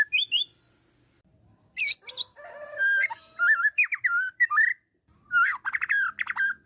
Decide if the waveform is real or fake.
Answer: real